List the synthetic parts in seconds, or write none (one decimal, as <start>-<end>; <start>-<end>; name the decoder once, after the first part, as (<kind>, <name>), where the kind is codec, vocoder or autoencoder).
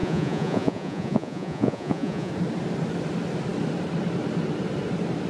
0.0-2.3 (vocoder, Vocos)